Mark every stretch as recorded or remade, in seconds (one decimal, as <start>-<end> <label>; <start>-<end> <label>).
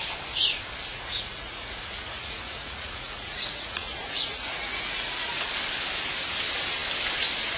0.0-0.9 recorded; 0.9-5.5 remade; 5.5-7.6 recorded